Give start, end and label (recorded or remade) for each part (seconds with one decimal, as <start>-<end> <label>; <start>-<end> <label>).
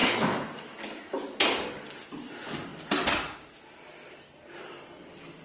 0.0-1.4 remade; 1.4-5.4 recorded